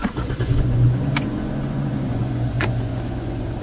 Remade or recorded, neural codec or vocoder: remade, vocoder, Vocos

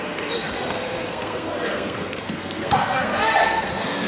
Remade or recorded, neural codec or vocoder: remade, codec, SNAC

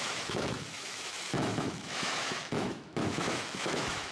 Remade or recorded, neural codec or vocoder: remade, autoencoder, DAC-VAE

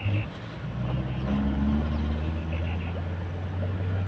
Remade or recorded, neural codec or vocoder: recorded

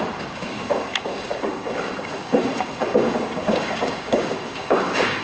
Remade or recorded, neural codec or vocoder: remade, codec, DAC